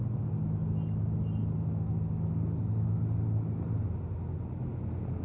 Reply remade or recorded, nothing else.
recorded